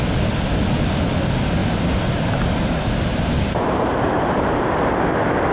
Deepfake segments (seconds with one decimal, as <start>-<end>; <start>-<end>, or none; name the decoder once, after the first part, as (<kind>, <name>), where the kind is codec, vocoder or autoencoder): 1.6-4.9 (vocoder, BigVGAN v2)